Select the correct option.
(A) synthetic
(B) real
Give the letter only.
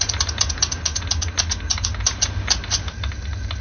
B